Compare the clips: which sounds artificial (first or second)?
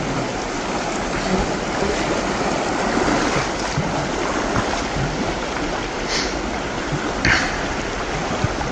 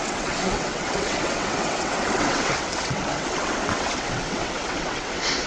second